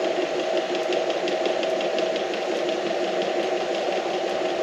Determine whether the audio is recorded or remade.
recorded